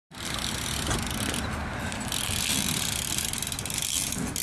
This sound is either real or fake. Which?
real